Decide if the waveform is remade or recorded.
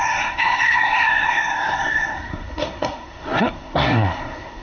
remade